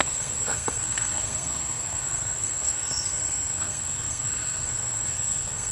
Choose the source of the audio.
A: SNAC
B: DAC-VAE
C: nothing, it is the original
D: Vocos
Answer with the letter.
A